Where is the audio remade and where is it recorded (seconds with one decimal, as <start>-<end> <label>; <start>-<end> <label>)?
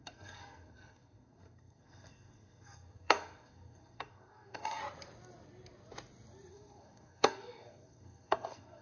0.0-4.8 remade; 4.8-6.5 recorded; 6.5-8.8 remade